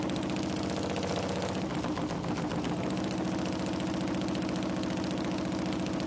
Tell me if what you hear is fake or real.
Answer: real